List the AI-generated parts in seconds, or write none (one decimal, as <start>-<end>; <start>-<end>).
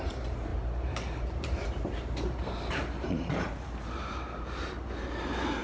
0.0-5.6